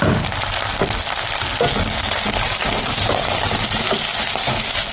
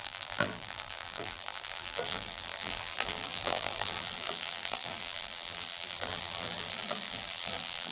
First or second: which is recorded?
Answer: first